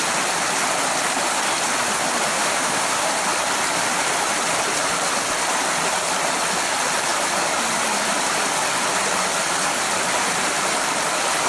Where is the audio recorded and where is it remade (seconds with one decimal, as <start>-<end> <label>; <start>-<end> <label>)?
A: 0.0-2.3 recorded; 2.3-3.1 remade; 3.1-11.5 recorded

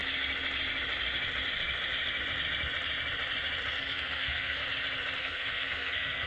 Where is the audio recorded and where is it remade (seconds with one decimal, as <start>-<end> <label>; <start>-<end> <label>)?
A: 0.0-3.8 recorded; 3.8-4.6 remade; 4.6-5.2 recorded; 5.2-6.3 remade

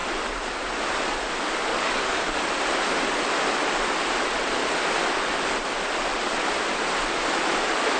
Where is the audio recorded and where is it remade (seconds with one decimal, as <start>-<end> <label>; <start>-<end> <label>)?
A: 0.0-1.7 recorded; 1.7-2.5 remade; 2.5-8.0 recorded

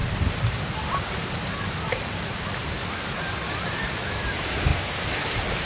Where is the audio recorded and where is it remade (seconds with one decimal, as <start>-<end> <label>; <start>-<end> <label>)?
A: 0.0-5.7 recorded